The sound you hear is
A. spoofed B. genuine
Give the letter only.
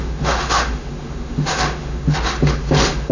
A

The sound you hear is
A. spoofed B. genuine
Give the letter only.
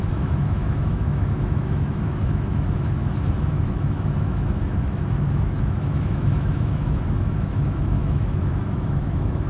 A